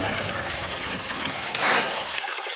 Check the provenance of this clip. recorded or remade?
remade